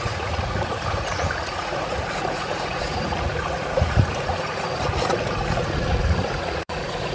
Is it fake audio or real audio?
fake